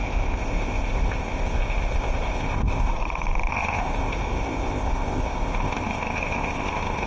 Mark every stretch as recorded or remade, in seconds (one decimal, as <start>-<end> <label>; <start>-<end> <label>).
0.0-2.9 remade; 2.9-3.5 recorded; 3.5-7.1 remade